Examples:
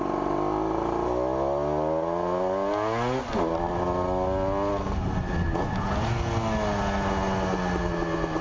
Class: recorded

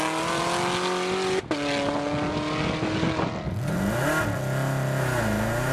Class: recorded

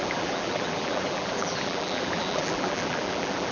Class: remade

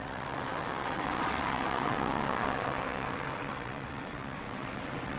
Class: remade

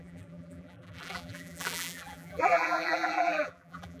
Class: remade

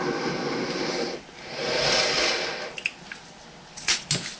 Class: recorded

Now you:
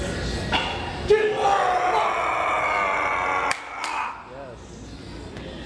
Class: recorded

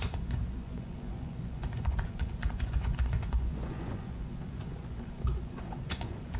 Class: remade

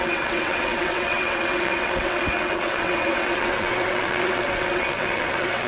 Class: remade